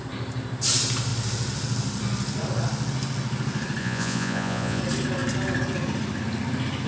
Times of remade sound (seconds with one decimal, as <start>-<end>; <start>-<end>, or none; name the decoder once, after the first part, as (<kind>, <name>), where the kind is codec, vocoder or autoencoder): 3.8-4.8 (vocoder, Vocos)